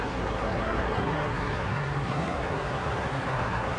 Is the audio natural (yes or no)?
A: no